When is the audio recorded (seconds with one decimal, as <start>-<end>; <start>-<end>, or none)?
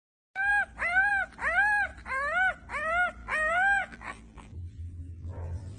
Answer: 0.0-3.2